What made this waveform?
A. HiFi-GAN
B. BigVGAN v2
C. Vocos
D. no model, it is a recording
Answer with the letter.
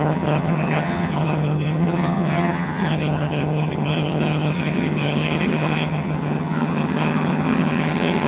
A